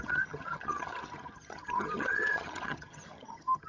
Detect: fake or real fake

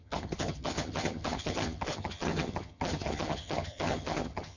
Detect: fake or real fake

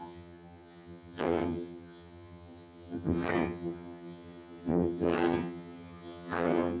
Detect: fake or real fake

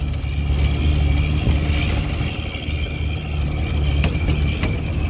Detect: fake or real real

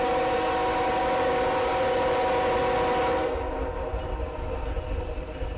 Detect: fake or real real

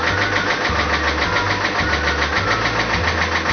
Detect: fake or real real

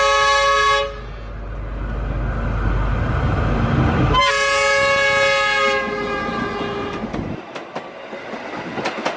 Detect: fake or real real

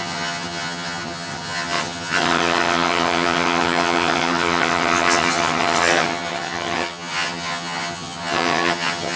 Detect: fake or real fake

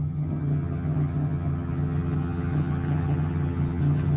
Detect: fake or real fake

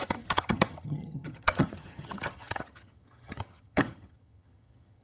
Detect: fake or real fake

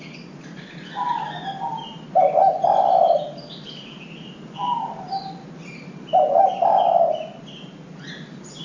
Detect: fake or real real